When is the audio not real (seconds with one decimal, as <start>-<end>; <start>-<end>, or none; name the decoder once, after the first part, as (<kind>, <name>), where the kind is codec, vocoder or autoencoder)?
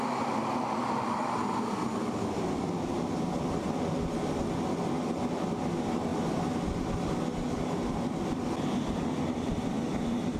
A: 0.8-1.4 (vocoder, BigVGAN v2)